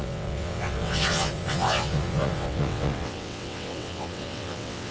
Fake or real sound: fake